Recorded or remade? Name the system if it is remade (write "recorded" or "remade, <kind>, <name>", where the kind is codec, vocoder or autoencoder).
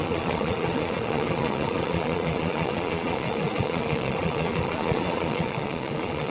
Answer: remade, vocoder, Vocos